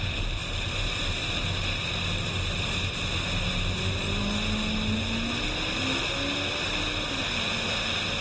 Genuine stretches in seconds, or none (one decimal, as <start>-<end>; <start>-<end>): 0.0-8.2